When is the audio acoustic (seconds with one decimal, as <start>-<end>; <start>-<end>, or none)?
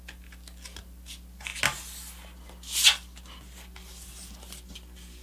0.0-5.2